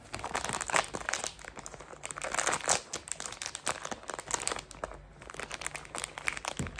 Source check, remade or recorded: recorded